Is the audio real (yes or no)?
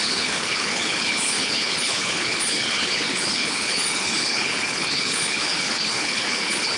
no